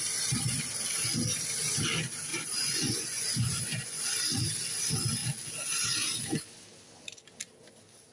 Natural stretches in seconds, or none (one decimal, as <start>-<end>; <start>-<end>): 0.0-2.3; 4.0-8.1

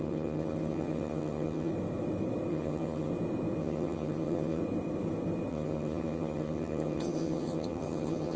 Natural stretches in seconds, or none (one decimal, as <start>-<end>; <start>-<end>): 1.7-2.5; 3.1-3.6; 4.6-5.5

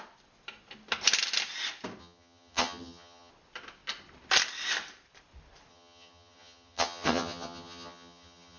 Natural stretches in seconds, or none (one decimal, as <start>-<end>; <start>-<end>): 0.0-2.0; 3.3-5.7

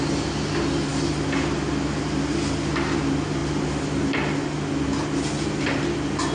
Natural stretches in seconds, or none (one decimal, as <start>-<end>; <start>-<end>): 0.0-6.3